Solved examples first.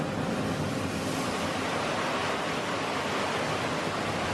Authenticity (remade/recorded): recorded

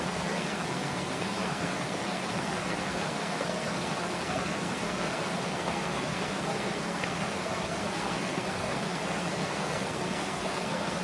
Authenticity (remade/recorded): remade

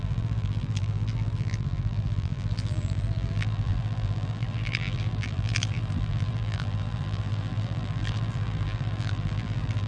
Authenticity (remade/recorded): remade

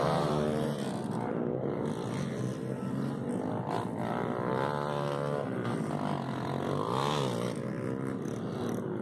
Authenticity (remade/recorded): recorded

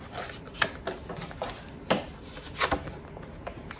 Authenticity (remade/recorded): recorded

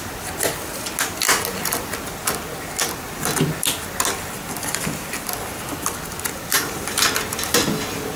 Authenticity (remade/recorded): recorded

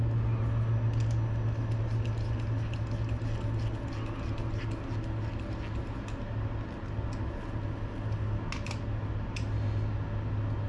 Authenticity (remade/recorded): recorded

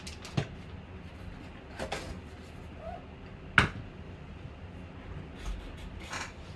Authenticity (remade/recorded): recorded